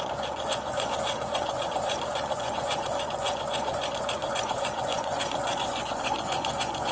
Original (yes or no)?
no